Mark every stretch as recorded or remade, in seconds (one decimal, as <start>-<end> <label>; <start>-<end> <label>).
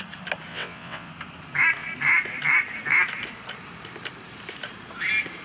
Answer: 0.0-0.5 recorded; 0.5-1.1 remade; 1.1-5.4 recorded